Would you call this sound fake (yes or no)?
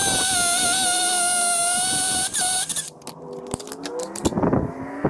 no